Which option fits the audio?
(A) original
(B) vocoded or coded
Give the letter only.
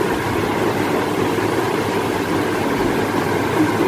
B